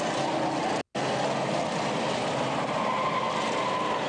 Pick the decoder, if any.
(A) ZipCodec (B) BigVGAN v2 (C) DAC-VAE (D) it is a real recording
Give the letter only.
D